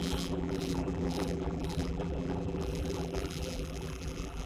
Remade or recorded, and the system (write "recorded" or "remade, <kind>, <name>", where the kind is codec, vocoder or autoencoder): remade, vocoder, BigVGAN v2